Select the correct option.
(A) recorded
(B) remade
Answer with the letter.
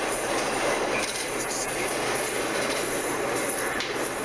A